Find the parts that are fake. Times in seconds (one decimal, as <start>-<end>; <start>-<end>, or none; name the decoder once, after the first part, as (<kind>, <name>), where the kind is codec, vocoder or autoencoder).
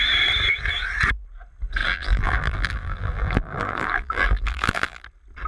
1.8-5.0 (vocoder, BigVGAN v2)